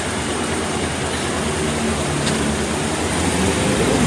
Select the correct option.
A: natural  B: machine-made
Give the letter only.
A